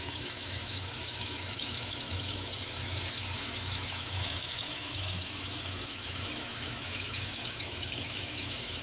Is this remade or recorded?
remade